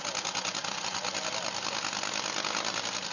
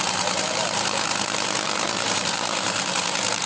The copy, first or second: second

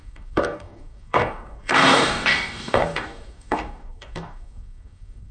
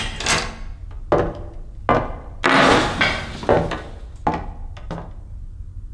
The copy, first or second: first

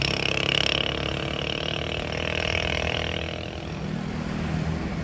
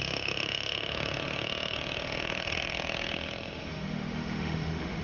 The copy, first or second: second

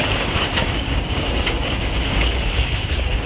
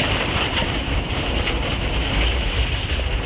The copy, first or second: first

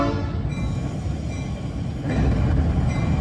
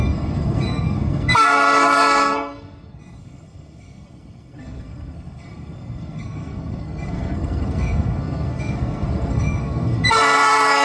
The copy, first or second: second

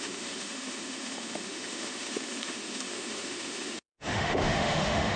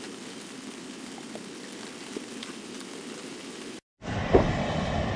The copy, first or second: first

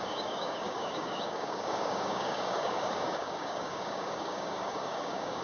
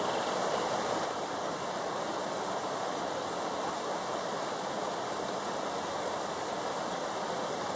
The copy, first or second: first